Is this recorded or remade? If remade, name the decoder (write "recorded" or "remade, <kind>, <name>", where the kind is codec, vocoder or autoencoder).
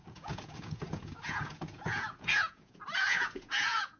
remade, vocoder, Vocos